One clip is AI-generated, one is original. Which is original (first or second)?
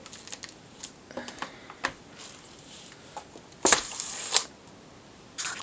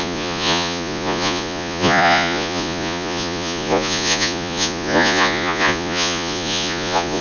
first